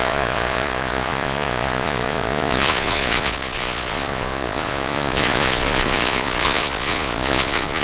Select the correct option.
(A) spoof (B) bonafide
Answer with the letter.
A